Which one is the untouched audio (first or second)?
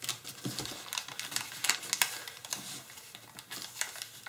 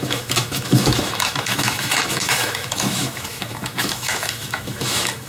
first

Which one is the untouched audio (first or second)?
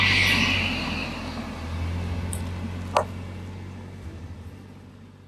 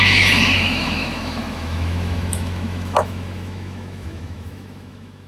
first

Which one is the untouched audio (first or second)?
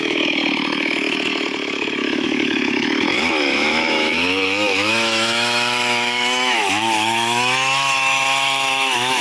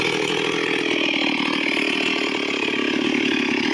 second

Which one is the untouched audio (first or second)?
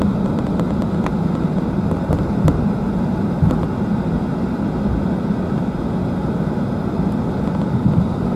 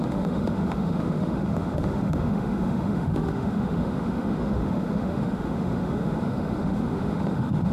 first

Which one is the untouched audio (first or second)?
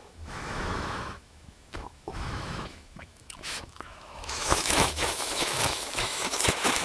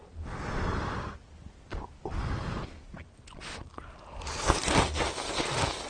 second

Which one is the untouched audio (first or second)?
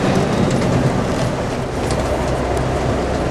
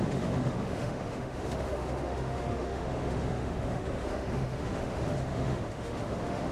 first